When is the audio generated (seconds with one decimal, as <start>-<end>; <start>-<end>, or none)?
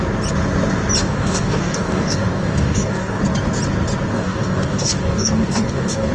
1.0-3.2; 4.1-6.1